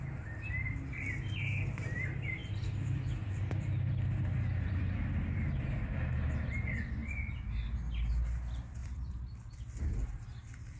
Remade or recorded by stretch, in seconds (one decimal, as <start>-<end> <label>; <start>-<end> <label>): 0.0-2.4 recorded; 2.4-5.8 remade; 5.8-8.8 recorded; 8.8-9.5 remade; 9.5-10.8 recorded